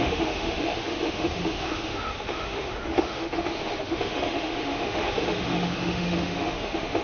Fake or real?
fake